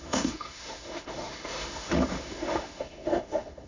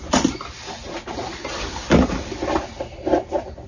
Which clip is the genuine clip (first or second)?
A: second